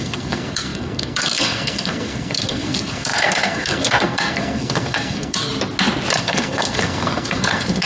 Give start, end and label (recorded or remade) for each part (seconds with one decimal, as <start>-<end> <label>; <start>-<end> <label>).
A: 0.0-5.5 remade; 5.5-6.2 recorded; 6.2-7.9 remade